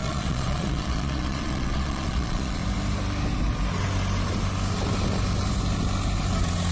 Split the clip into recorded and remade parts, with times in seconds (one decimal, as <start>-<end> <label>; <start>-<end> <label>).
0.0-2.6 remade; 2.6-6.7 recorded